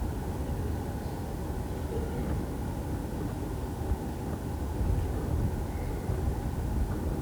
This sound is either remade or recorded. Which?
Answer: recorded